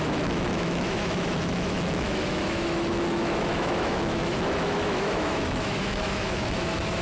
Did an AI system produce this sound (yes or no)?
yes